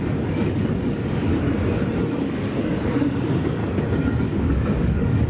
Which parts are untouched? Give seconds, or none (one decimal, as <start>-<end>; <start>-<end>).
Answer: 1.3-2.0; 3.6-4.2